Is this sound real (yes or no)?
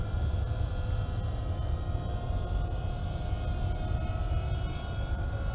yes